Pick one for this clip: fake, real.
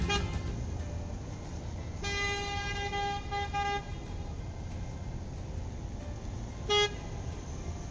real